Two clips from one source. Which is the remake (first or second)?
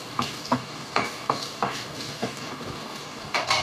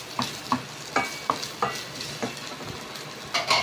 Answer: first